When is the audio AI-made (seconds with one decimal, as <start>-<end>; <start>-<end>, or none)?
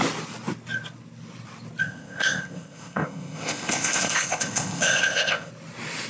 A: 1.8-5.5